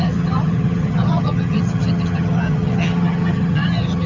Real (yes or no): no